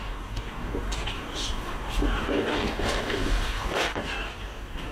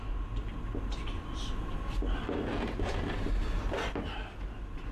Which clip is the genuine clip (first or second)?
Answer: second